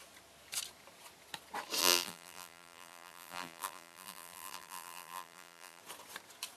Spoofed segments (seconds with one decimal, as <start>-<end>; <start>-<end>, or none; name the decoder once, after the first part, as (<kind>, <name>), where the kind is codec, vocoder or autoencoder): 1.8-5.8 (vocoder, BigVGAN v2)